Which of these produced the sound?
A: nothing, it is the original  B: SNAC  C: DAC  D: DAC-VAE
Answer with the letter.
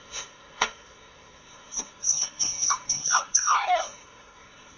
B